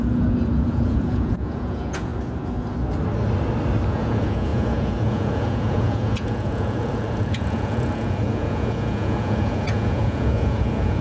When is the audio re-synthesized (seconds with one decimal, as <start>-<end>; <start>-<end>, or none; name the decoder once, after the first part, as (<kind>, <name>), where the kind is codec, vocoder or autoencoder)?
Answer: 0.0-2.1 (vocoder, Vocos); 3.9-11.0